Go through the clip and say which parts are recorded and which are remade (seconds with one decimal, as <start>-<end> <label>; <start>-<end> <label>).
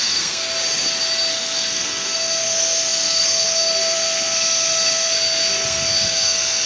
0.0-0.4 remade; 0.4-1.3 recorded; 1.3-6.7 remade